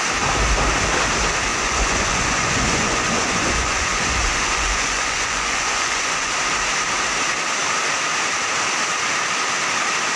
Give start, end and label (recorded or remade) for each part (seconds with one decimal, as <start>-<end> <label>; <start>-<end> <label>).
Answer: 0.0-1.5 recorded; 1.5-6.3 remade; 6.3-10.2 recorded